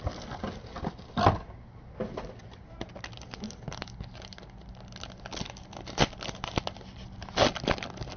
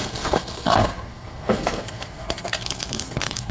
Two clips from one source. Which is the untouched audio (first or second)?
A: first